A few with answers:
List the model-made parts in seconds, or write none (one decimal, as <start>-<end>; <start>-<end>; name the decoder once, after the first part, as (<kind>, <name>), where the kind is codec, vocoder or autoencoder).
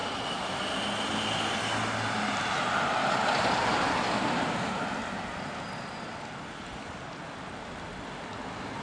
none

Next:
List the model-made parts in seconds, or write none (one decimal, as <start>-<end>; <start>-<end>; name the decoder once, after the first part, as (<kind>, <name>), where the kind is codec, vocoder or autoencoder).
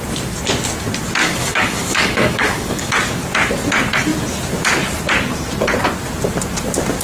1.2-2.9 (codec, DAC)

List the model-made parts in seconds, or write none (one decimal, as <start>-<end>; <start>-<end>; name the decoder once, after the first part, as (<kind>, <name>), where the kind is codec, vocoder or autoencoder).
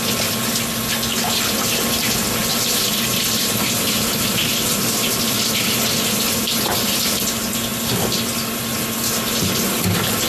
2.4-5.7 (vocoder, BigVGAN v2)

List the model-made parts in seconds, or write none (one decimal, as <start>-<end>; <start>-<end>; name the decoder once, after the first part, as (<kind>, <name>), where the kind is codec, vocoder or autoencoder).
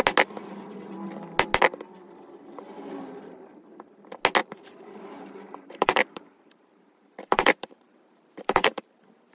4.4-8.9 (vocoder, BigVGAN v2)